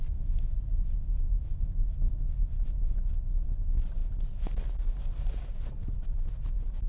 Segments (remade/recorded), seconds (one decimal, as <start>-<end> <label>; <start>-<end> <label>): 0.0-6.9 recorded